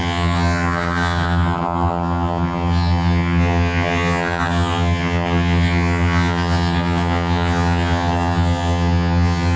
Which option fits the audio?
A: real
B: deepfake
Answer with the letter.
B